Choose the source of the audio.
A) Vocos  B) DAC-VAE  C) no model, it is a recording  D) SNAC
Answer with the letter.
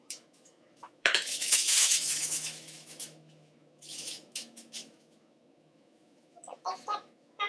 B